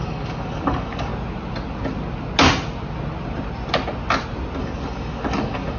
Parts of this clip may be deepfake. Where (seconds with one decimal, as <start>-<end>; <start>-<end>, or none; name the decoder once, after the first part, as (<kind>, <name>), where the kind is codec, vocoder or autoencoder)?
0.0-1.1 (codec, DAC); 4.6-5.8